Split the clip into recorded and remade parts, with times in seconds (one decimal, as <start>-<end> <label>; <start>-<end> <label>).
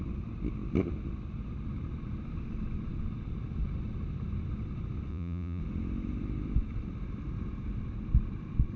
0.0-5.1 recorded; 5.1-5.6 remade; 5.6-8.8 recorded